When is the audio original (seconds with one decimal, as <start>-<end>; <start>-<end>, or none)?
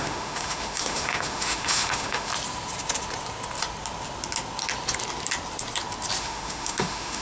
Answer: 2.3-6.2